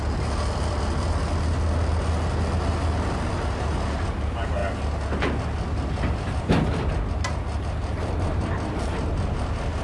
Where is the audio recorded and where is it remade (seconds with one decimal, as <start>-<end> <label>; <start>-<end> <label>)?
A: 0.0-9.8 recorded